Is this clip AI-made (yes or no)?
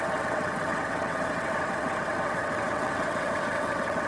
yes